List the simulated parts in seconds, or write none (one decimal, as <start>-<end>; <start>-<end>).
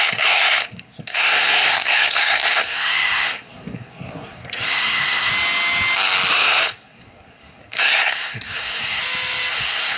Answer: 0.0-5.3; 6.3-9.0; 9.5-10.0